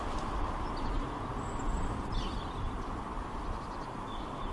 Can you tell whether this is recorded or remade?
recorded